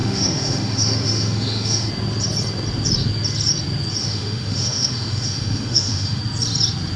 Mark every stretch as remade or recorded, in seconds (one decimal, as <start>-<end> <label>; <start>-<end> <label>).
0.0-1.9 remade; 1.9-4.0 recorded; 4.0-6.2 remade; 6.2-7.0 recorded